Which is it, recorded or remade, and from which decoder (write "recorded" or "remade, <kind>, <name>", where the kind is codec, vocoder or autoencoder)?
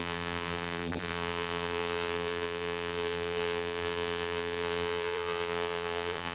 remade, vocoder, BigVGAN v2